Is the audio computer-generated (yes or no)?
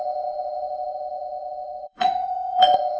yes